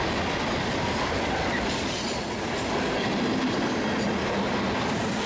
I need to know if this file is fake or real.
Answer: real